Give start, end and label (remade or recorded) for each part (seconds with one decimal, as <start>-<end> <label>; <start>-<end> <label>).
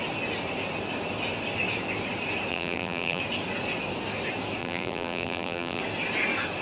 0.0-2.5 recorded; 2.5-3.2 remade; 3.2-4.6 recorded; 4.6-5.8 remade; 5.8-6.6 recorded